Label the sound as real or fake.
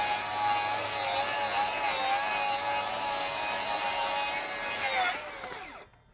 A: real